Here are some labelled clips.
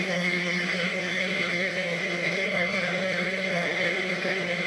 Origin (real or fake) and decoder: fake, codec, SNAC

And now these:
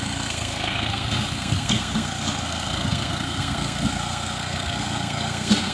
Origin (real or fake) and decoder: fake, codec, SNAC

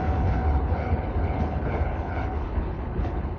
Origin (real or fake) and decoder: fake, codec, HILCodec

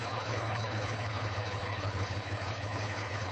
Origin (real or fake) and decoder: fake, codec, HILCodec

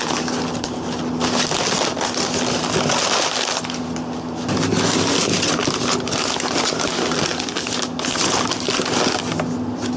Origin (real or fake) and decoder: real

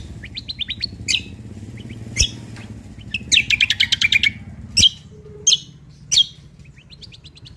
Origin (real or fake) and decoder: real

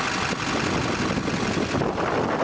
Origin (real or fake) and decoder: real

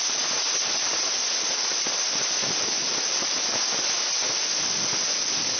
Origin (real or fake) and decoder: real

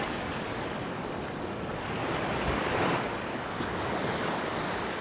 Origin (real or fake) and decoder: fake, codec, DAC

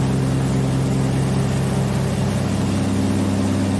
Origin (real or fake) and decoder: real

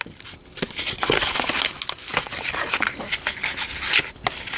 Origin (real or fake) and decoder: real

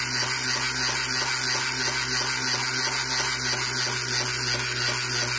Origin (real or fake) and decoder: real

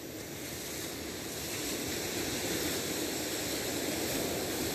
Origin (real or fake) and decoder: real